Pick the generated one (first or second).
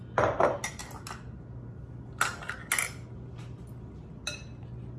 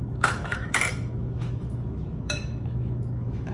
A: second